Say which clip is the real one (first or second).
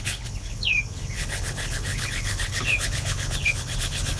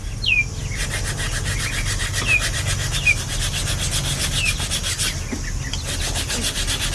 second